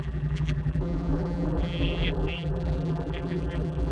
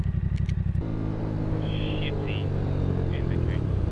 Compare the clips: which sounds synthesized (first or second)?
first